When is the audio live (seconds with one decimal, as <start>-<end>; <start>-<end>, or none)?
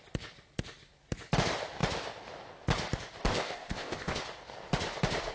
0.0-3.3; 4.2-5.3